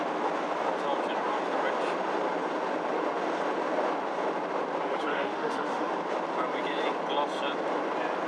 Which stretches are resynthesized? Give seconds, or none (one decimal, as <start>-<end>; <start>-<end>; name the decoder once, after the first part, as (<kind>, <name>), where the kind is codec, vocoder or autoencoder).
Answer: 5.1-5.9 (autoencoder, DAC-VAE)